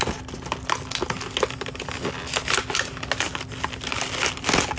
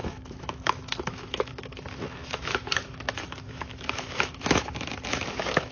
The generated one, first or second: second